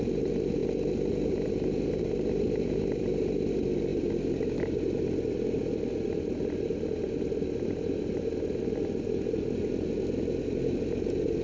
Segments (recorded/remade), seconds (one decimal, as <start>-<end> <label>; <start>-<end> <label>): 0.0-11.4 recorded